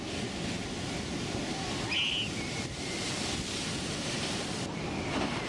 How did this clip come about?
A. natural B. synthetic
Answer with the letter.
A